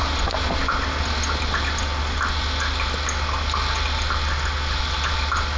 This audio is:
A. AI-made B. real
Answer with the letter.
B